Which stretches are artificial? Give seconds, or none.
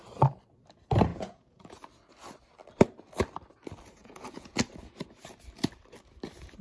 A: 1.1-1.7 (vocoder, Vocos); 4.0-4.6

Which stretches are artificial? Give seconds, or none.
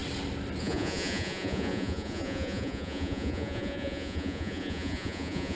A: 0.6-5.6 (vocoder, Vocos)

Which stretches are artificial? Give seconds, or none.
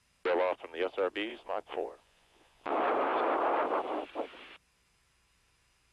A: 1.3-2.7 (vocoder, Vocos)